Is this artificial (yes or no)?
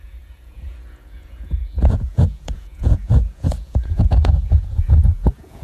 yes